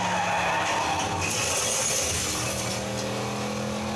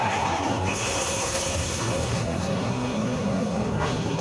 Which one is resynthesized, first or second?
second